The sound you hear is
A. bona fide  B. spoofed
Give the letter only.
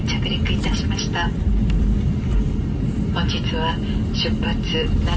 A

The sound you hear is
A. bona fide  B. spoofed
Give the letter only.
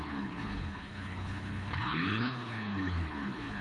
B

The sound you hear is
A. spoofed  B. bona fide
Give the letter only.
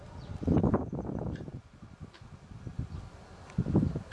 B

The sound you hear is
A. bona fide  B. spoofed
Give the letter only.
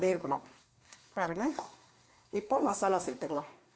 B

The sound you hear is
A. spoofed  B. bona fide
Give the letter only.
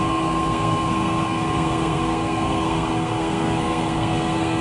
A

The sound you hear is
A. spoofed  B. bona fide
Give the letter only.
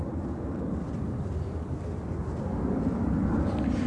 B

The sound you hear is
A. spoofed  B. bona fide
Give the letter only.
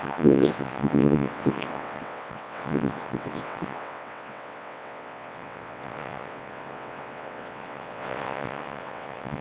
A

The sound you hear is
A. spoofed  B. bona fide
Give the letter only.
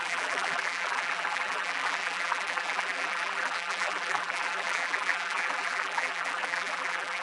A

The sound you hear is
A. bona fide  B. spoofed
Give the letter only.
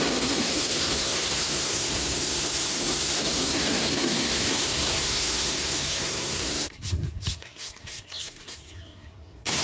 B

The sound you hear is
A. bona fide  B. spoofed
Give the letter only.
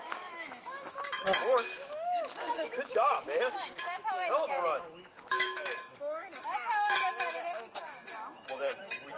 B